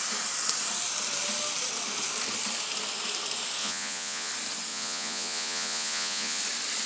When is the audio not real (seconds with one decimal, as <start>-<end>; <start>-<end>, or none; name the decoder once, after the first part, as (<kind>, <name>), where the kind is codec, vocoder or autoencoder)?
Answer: 3.6-4.3 (vocoder, Vocos); 4.7-6.4